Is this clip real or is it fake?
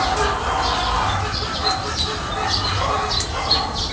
real